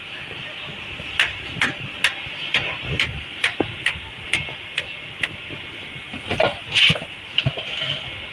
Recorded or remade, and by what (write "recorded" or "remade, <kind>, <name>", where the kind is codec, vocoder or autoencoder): recorded